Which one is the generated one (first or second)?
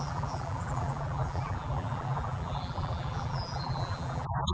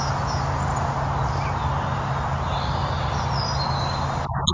first